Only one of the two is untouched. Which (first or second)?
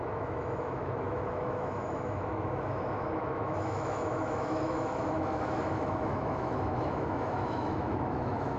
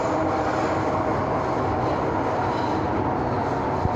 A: second